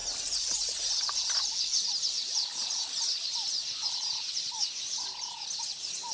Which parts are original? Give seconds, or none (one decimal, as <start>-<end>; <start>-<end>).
0.0-6.1